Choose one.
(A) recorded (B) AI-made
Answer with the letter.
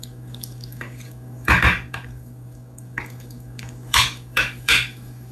B